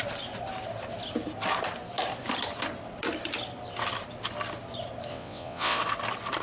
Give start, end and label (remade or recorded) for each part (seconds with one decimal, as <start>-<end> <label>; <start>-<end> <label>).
0.0-5.1 recorded; 5.1-5.8 remade; 5.8-6.4 recorded